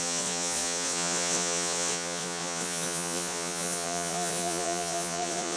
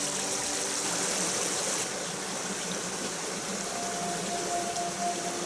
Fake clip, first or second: first